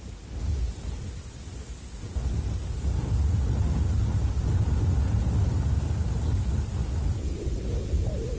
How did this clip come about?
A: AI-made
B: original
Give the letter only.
B